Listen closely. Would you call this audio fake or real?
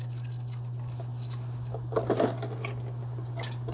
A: real